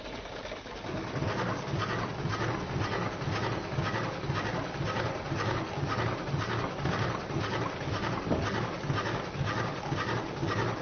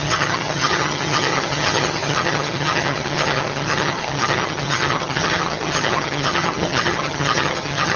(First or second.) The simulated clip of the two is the second